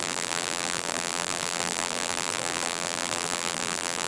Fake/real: fake